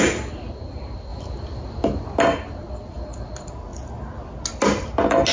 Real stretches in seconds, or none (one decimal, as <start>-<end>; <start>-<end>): 0.0-5.3